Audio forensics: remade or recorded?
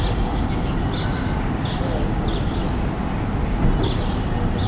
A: recorded